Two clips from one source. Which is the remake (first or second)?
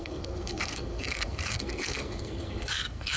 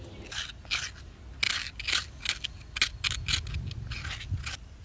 first